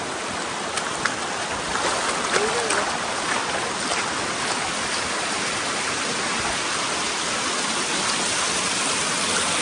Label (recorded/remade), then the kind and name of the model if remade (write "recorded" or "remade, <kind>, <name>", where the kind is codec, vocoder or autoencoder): recorded